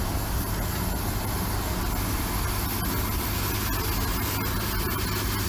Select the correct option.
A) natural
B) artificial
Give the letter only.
A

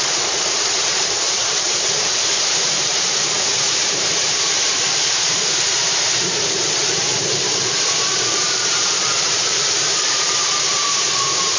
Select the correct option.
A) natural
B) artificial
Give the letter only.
B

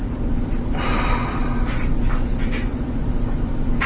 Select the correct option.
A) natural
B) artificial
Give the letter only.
B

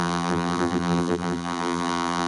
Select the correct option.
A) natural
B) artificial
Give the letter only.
B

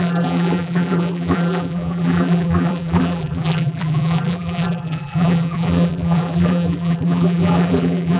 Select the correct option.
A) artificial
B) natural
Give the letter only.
A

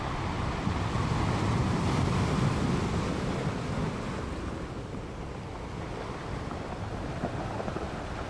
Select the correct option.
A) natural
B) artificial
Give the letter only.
A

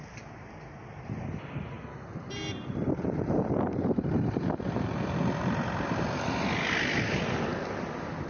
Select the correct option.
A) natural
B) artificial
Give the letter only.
A